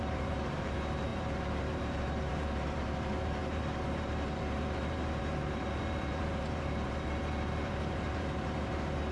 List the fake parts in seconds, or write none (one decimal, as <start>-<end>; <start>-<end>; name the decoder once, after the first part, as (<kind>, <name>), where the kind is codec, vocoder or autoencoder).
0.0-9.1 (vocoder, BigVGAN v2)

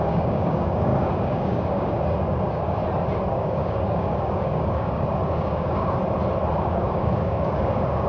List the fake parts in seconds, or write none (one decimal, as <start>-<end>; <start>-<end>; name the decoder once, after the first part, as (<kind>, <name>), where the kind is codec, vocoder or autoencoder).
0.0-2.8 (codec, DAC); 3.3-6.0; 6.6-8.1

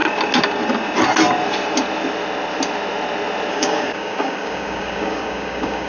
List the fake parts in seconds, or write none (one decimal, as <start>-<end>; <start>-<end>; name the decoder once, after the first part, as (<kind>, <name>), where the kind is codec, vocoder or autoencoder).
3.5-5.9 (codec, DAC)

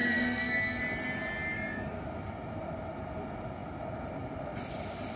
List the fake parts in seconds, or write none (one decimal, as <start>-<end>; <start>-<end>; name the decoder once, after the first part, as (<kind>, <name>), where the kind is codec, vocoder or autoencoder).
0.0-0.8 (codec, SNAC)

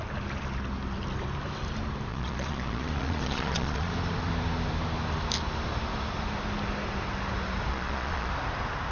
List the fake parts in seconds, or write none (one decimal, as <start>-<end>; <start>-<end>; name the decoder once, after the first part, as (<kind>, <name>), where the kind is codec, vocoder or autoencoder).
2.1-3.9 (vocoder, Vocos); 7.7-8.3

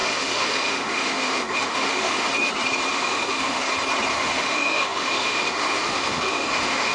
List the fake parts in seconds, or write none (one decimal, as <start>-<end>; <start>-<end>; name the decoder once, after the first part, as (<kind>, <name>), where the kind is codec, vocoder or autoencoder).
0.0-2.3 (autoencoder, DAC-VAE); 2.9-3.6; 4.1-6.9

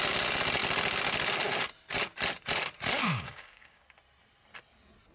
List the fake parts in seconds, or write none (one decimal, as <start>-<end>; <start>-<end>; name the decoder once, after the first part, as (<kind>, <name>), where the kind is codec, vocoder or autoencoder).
3.0-3.8 (codec, DAC)

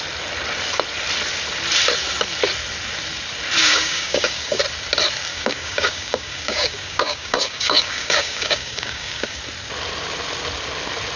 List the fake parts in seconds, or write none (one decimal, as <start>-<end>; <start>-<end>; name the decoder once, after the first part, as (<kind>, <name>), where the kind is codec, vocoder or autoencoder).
3.6-4.6 (codec, DAC); 5.3-9.4